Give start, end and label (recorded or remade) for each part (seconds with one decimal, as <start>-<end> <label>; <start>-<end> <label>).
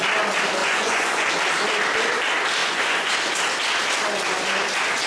0.0-0.6 recorded; 0.6-1.3 remade; 1.3-2.6 recorded; 2.6-3.1 remade; 3.1-5.1 recorded